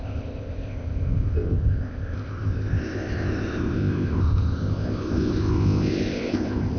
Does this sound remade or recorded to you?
remade